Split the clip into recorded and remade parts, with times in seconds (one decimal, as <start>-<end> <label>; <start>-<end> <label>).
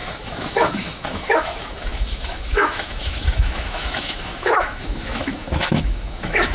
0.0-6.5 remade